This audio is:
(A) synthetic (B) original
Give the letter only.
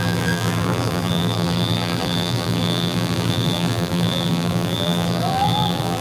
A